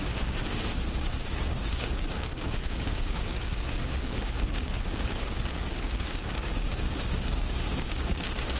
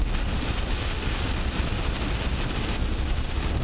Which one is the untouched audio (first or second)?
second